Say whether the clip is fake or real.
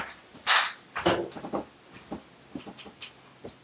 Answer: real